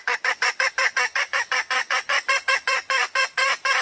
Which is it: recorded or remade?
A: remade